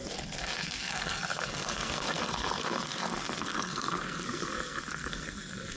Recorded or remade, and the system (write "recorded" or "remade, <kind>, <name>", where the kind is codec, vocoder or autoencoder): remade, codec, SNAC